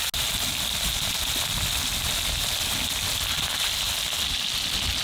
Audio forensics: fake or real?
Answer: real